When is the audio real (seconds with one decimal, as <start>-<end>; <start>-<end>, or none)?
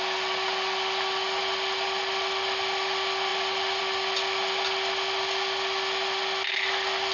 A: 0.0-7.1